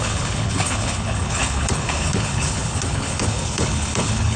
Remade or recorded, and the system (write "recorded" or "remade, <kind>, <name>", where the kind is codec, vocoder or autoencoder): remade, codec, HILCodec